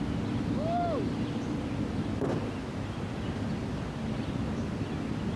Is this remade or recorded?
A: recorded